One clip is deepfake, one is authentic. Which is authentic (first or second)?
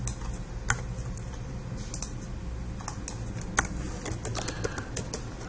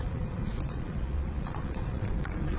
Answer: first